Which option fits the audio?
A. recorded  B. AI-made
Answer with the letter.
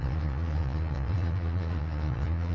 B